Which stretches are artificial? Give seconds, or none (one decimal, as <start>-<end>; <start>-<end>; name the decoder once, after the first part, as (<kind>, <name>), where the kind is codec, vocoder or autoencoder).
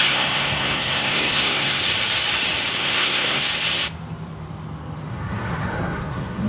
0.0-1.8 (codec, SNAC); 2.8-3.5; 5.1-6.5